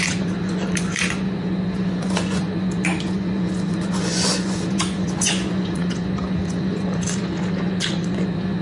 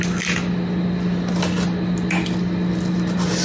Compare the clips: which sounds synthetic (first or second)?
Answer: first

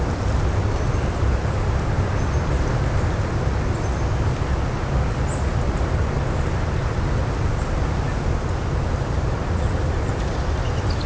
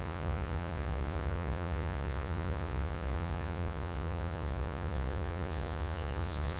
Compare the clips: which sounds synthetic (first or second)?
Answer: second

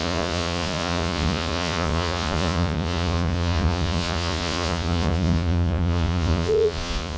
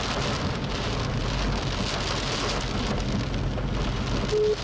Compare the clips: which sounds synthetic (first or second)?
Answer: first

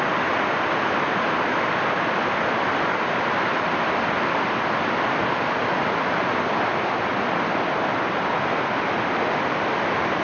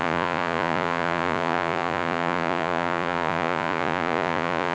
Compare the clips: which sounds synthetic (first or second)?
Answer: second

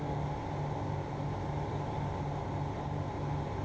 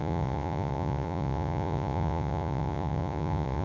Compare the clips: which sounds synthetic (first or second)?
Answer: second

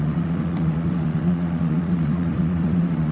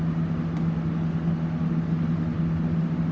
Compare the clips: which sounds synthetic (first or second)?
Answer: first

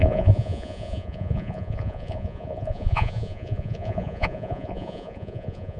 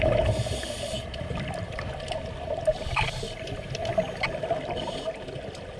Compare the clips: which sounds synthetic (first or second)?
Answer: first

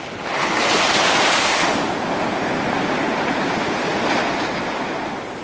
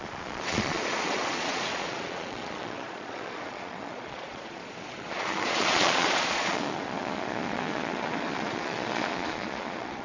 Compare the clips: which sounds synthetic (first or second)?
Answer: second